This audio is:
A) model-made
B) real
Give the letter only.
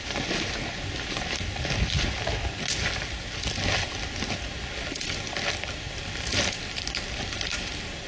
B